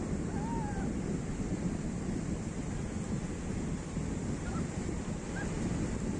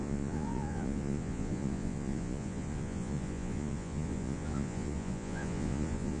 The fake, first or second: second